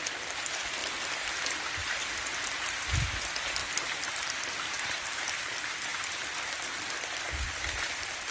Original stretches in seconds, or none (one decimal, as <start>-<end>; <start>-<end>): 0.0-8.3